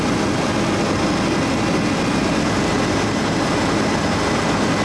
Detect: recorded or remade recorded